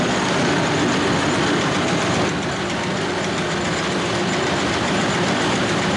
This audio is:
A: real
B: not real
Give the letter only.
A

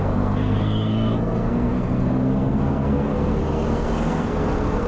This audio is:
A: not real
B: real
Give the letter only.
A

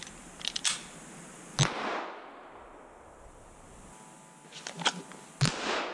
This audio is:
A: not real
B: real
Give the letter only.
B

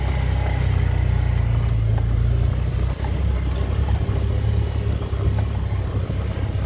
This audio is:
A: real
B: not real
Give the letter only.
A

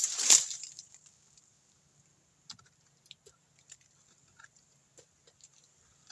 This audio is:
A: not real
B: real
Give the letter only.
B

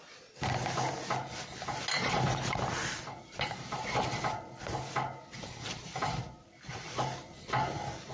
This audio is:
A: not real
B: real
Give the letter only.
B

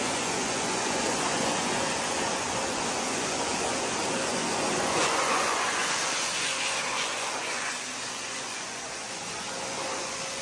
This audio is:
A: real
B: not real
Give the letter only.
B